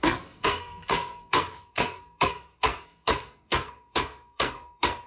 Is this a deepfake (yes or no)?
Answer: yes